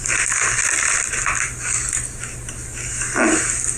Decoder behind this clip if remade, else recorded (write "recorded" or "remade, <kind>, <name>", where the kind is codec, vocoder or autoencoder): recorded